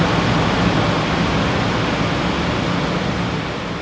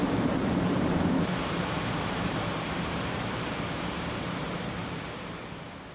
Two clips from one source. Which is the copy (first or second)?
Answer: second